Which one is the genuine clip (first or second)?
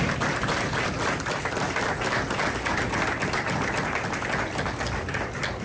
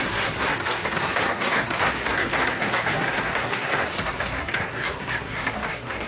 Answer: first